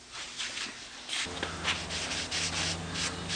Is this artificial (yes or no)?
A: no